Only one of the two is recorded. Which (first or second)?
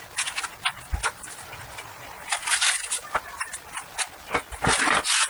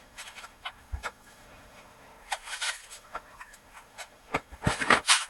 first